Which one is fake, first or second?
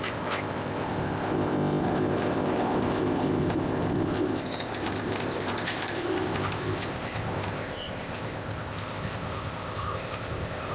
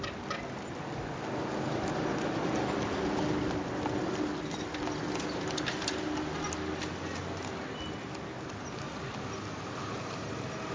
first